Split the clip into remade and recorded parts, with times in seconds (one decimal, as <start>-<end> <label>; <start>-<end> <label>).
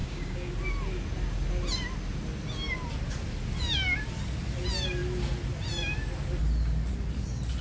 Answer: 0.0-0.5 remade; 0.5-7.6 recorded